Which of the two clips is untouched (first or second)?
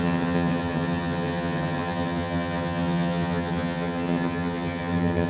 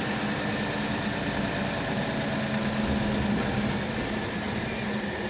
second